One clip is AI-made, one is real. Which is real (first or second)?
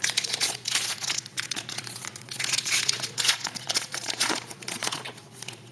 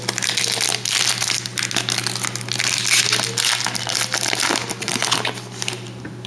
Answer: second